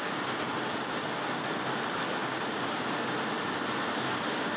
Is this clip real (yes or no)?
yes